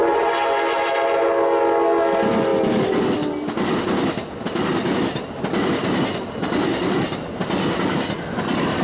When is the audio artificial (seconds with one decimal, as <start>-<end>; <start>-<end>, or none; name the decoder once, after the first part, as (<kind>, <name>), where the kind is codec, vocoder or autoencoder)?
none